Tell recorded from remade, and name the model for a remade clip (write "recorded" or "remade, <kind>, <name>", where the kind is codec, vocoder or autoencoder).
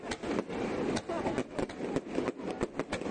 recorded